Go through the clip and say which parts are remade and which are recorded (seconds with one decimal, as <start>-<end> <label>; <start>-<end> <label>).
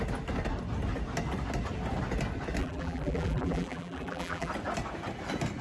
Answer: 0.0-2.6 recorded; 2.6-4.5 remade; 4.5-5.6 recorded